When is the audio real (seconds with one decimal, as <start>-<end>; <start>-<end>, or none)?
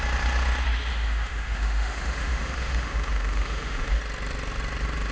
0.0-0.9; 4.0-5.1